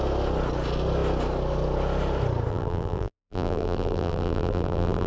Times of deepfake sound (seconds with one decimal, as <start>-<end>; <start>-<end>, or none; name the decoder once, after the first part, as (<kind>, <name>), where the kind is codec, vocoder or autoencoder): 2.5-5.1 (vocoder, BigVGAN v2)